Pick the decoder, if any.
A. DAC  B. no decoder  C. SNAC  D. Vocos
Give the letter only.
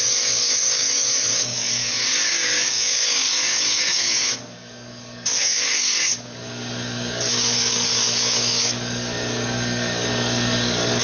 A